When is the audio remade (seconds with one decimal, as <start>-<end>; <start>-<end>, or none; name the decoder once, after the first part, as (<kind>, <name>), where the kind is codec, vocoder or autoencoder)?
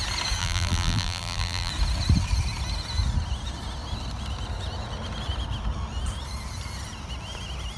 0.4-1.7 (vocoder, BigVGAN v2)